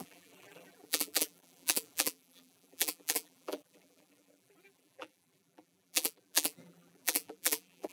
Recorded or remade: remade